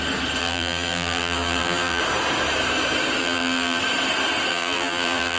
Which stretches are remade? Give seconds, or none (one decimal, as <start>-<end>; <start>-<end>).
0.4-2.0; 3.2-3.8; 4.5-5.4